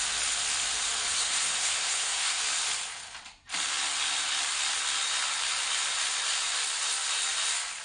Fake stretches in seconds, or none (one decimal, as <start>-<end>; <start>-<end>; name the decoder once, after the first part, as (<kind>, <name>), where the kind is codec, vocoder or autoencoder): 1.1-2.4 (codec, SNAC)